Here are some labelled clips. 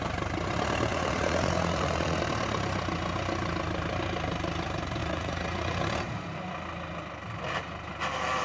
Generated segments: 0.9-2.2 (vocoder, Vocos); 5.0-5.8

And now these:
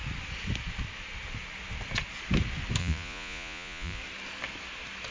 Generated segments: 2.8-4.0 (vocoder, Vocos)

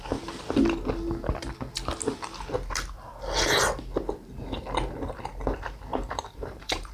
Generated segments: 5.9-6.9 (vocoder, BigVGAN v2)